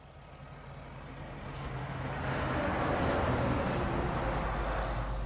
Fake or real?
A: real